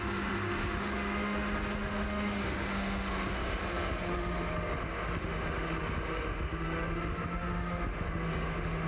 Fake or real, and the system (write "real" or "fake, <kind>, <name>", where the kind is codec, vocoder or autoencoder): fake, autoencoder, DAC-VAE